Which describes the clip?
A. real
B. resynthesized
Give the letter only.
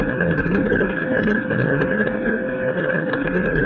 B